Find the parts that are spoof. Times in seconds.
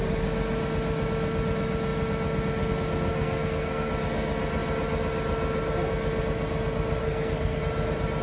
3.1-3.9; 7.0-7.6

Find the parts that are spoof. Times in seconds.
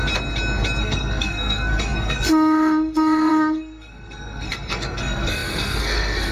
0.8-6.3